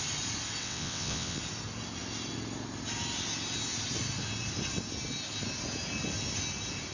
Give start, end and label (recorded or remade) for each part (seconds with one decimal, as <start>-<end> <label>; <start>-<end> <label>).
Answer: 0.0-0.6 recorded; 0.6-1.4 remade; 1.4-6.9 recorded